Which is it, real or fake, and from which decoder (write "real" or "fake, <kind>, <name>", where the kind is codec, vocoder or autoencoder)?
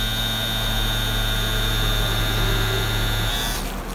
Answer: real